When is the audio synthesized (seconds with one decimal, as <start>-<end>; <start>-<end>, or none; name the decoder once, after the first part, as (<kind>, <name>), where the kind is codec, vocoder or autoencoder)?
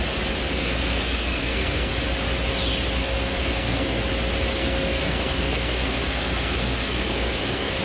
0.5-1.9 (codec, SNAC); 3.0-4.0; 4.5-7.8